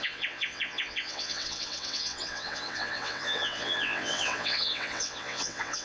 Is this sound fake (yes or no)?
yes